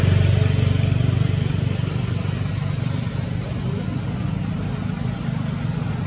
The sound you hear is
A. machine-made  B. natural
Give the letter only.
B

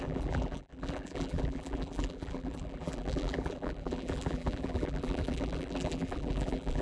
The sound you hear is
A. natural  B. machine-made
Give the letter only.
B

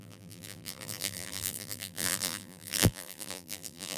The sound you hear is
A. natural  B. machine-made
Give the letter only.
B